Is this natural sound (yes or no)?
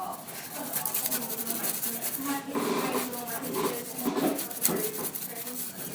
yes